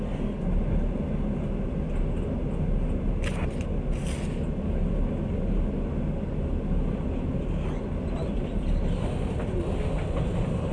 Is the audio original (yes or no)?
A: yes